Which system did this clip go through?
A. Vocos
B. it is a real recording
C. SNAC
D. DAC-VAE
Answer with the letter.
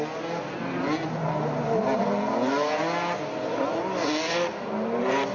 B